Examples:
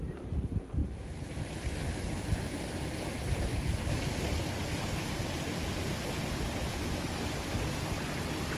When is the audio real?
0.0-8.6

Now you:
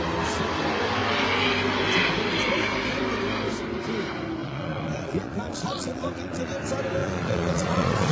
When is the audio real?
0.0-4.4; 6.5-7.0

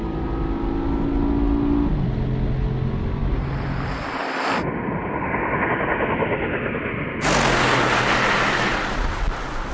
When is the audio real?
0.0-3.2; 5.7-9.7

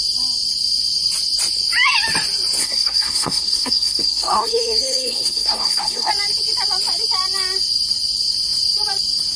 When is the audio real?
0.0-2.6; 6.1-9.4

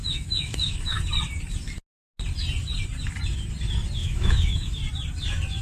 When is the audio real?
1.0-4.0; 4.8-5.6

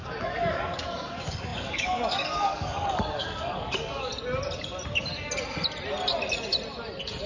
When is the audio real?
4.1-7.3